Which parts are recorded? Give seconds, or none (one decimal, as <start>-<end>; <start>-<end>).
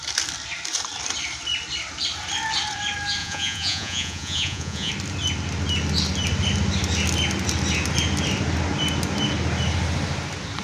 0.0-3.2; 4.9-10.6